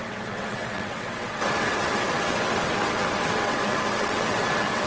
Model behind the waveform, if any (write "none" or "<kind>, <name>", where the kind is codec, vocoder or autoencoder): vocoder, WaveNeXt